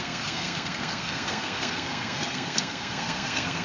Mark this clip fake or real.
fake